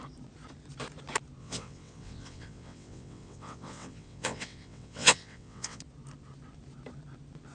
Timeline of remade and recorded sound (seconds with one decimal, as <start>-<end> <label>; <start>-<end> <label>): 0.0-1.4 recorded; 1.4-5.8 remade; 5.8-7.5 recorded

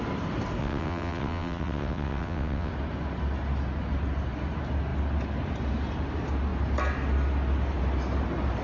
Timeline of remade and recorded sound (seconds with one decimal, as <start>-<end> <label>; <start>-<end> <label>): 0.0-0.6 recorded; 0.6-2.7 remade; 2.7-8.6 recorded